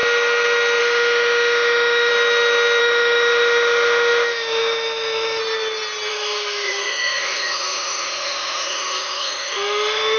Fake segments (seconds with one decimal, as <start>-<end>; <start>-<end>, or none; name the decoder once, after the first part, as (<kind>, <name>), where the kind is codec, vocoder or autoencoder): 0.8-2.1 (autoencoder, DAC-VAE); 2.8-5.4; 6.1-10.2